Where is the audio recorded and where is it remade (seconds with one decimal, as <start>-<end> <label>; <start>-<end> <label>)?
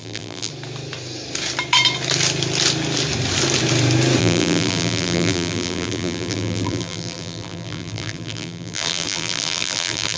0.0-0.5 remade; 0.5-4.2 recorded; 4.2-10.2 remade